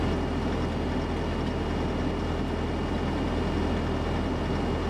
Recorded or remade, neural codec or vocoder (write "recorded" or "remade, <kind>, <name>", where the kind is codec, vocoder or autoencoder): recorded